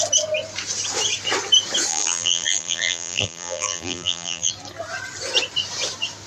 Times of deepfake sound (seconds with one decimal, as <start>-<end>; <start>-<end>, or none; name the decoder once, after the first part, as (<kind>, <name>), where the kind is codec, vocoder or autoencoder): 1.9-4.5 (vocoder, BigVGAN v2)